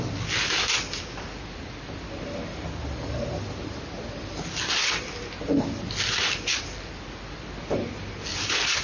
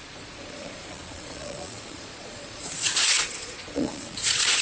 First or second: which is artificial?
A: second